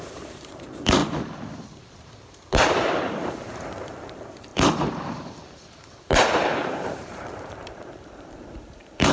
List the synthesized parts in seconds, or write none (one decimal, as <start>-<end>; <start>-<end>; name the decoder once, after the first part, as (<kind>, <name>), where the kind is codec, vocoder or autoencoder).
0.0-1.0 (vocoder, BigVGAN v2); 1.8-9.1